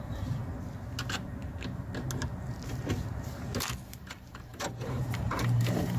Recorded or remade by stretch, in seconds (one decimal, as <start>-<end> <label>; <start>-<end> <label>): 0.0-0.4 remade; 0.4-4.0 recorded; 4.0-6.0 remade